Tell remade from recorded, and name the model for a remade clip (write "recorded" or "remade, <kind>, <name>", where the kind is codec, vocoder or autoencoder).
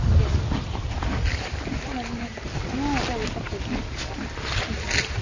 recorded